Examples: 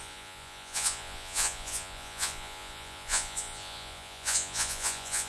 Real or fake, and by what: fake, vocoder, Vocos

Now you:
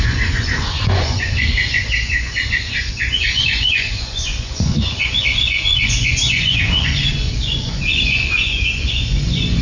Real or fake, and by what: fake, vocoder, Vocos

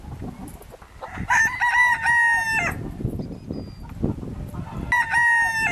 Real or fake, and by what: real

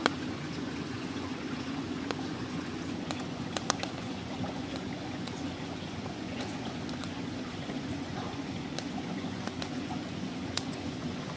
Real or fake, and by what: fake, vocoder, Vocos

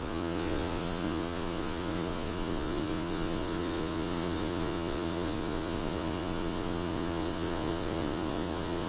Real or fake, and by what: fake, vocoder, Vocos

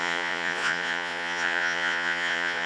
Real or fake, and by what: fake, vocoder, Vocos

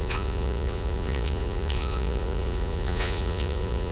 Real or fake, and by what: fake, vocoder, Vocos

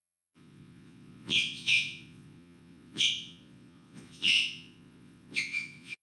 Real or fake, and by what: fake, vocoder, Vocos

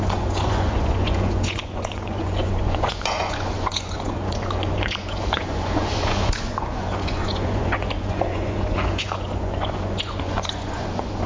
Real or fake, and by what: fake, vocoder, Vocos